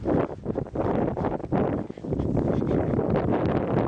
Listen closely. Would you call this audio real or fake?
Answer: real